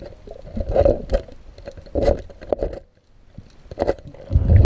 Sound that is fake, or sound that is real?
real